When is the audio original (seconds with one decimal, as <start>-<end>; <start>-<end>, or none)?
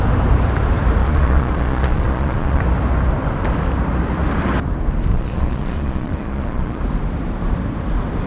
0.0-1.0; 2.6-5.1; 6.8-8.3